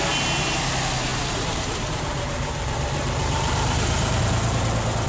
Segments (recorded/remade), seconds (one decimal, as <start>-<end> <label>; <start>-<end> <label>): 0.0-1.1 recorded; 1.1-4.2 remade; 4.2-5.1 recorded